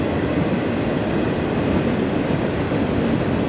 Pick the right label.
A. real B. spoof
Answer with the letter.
A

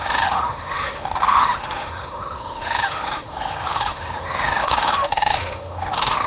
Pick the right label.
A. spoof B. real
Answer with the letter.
A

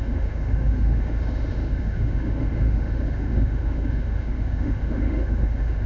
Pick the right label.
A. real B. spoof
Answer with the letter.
B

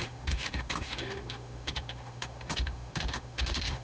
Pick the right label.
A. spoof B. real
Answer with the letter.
A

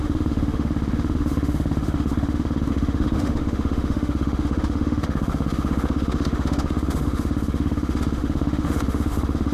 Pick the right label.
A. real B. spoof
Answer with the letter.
B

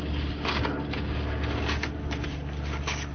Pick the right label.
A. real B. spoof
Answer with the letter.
A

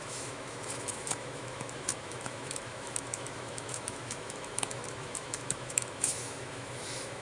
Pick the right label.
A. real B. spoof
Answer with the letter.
B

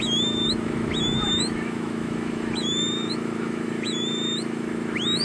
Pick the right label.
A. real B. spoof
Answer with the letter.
B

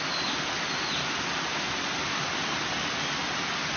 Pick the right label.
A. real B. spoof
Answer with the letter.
A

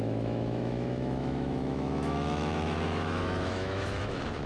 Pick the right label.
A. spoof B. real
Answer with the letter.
A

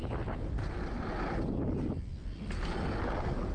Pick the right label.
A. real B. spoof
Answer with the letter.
A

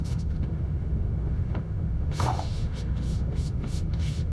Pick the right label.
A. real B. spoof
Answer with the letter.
B